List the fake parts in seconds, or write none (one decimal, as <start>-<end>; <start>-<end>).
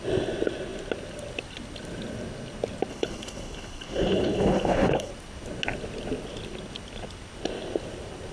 2.9-5.1